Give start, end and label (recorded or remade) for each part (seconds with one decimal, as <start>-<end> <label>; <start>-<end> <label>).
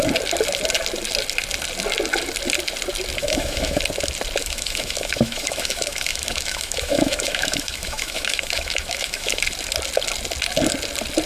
0.0-3.2 recorded; 3.2-3.8 remade; 3.8-4.4 recorded; 4.4-9.4 remade; 9.4-11.3 recorded